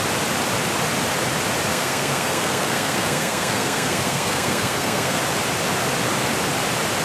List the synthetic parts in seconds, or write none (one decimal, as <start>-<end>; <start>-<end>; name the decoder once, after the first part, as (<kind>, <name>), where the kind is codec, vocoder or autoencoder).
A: 1.7-5.2 (codec, SNAC)